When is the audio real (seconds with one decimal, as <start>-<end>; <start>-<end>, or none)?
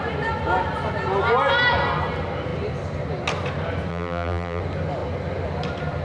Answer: 0.0-3.9; 4.6-6.0